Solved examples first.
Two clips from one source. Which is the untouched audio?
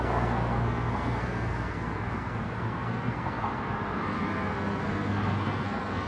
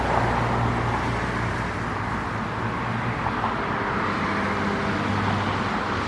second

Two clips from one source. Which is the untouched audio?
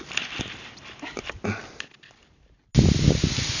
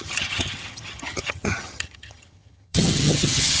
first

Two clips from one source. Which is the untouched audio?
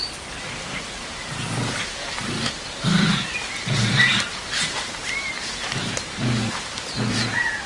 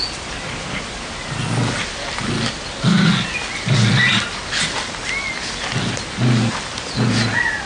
second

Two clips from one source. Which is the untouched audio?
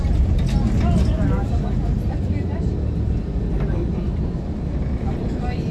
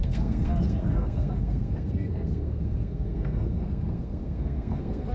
first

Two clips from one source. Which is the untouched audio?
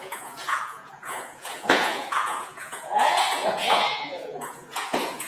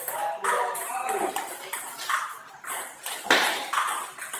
second